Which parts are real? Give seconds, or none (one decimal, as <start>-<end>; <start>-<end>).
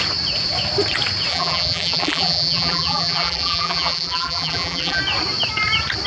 0.0-1.3; 5.0-6.1